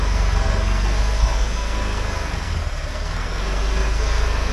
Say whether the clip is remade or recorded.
remade